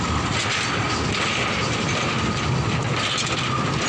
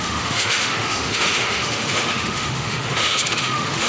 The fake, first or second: second